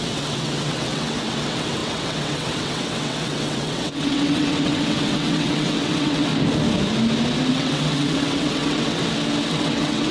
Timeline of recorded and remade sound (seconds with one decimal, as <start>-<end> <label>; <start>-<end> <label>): 0.0-6.3 remade; 6.3-7.5 recorded; 7.5-9.0 remade; 9.0-9.5 recorded; 9.5-10.1 remade